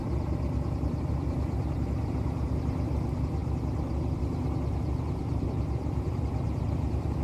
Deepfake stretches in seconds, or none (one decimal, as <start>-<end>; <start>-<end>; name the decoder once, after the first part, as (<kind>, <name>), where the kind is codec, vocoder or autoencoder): 0.0-7.2 (vocoder, BigVGAN v2)